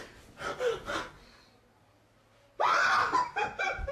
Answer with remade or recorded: recorded